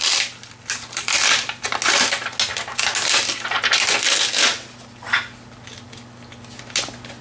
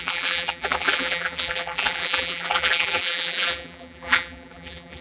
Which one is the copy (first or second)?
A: second